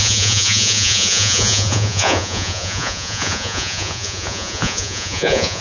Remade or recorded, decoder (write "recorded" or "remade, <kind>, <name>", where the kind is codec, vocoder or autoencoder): remade, vocoder, Vocos